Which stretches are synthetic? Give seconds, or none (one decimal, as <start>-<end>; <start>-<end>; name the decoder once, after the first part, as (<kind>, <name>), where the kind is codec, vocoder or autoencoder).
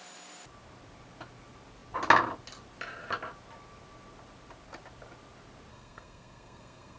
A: 5.7-7.0 (codec, SNAC)